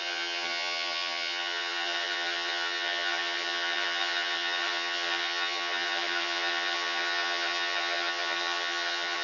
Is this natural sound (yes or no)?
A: no